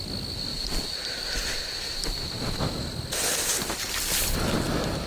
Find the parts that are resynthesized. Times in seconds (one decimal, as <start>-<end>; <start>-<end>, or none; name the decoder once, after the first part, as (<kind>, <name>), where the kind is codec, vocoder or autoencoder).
0.5-2.3 (vocoder, BigVGAN v2)